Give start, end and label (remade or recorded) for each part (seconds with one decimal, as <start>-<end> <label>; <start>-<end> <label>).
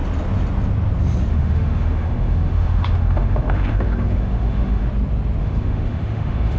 0.0-1.3 recorded; 1.3-4.9 remade; 4.9-5.4 recorded; 5.4-6.6 remade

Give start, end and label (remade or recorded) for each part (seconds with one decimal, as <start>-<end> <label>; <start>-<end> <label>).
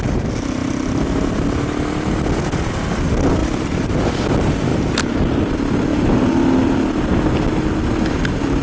0.0-3.4 recorded; 3.4-4.1 remade; 4.1-4.7 recorded; 4.7-5.5 remade; 5.5-5.9 recorded; 5.9-6.8 remade; 6.8-8.6 recorded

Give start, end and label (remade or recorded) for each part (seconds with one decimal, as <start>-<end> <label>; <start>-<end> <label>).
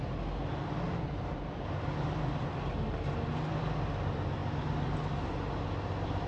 0.0-6.3 recorded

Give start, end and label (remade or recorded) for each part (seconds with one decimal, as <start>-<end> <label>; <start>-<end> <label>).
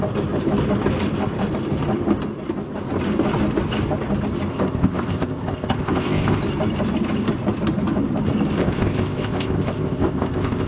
0.0-4.5 recorded; 4.5-6.4 remade; 6.4-8.6 recorded; 8.6-10.7 remade